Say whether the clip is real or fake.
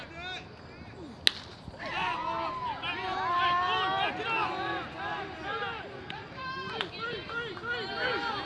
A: real